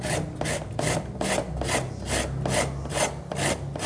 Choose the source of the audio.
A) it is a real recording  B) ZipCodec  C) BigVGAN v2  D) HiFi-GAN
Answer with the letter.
A